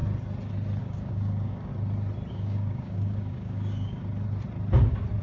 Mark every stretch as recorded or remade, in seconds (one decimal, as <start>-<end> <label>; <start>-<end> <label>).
0.0-0.8 recorded; 0.8-1.7 remade; 1.7-2.3 recorded; 2.3-4.0 remade; 4.0-5.2 recorded